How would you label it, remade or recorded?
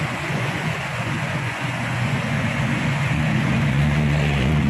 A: remade